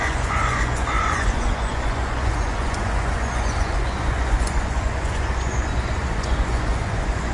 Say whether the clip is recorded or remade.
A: remade